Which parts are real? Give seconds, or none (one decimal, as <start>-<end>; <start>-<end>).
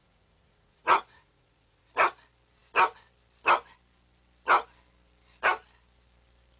1.9-6.6